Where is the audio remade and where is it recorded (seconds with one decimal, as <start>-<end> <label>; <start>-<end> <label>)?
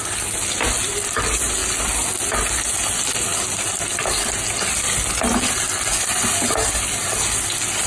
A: 0.0-7.9 recorded